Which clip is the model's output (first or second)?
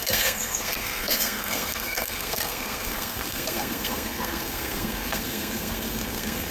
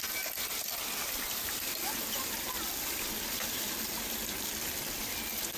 first